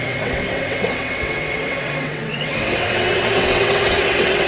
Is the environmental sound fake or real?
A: fake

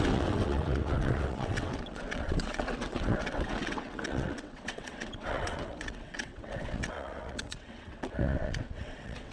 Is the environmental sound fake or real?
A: fake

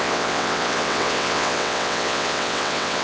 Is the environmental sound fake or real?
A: fake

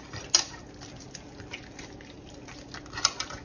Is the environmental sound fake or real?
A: real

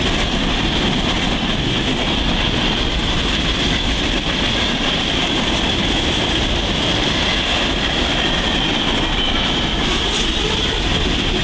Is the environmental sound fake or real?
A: real